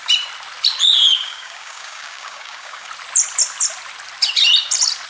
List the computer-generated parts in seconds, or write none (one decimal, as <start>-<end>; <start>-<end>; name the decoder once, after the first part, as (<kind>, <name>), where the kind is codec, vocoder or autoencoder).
1.1-2.9 (codec, DAC)